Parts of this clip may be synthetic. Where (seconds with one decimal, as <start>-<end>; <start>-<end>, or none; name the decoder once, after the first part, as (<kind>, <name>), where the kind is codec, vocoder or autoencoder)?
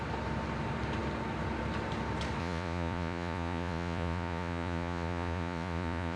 2.4-6.2 (vocoder, Vocos)